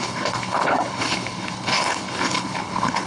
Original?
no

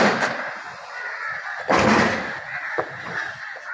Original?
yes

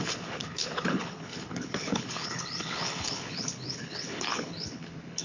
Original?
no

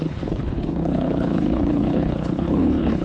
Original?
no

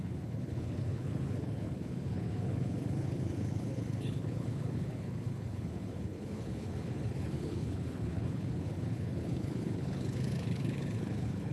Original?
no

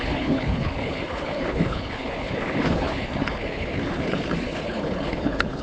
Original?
no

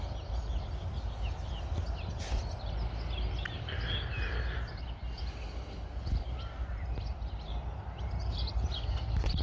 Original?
yes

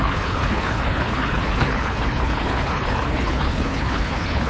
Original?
no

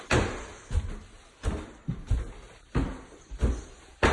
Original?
yes